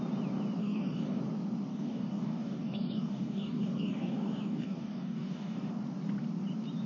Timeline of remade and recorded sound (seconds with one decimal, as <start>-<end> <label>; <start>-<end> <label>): 0.0-0.6 recorded; 0.6-1.2 remade; 1.2-1.7 recorded; 1.7-5.7 remade; 5.7-6.9 recorded